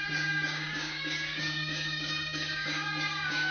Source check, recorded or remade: remade